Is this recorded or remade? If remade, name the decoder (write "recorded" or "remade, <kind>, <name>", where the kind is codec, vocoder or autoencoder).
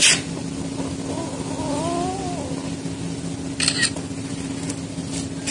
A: recorded